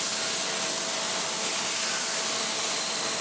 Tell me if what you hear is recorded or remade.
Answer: recorded